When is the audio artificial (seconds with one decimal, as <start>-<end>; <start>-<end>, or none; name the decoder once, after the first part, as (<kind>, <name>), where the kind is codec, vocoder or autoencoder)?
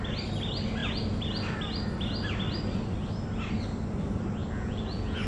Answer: 4.4-5.3 (vocoder, Vocos)